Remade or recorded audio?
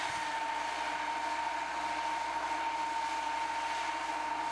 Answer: recorded